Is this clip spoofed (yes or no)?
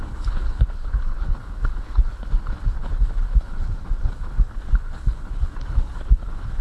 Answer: yes